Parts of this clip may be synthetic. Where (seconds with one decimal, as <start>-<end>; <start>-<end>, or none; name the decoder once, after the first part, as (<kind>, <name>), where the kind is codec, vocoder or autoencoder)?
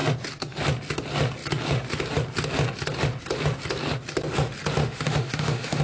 4.8-5.8 (autoencoder, DAC-VAE)